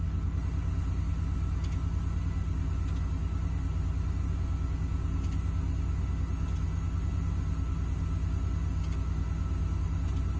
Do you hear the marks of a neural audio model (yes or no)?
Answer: no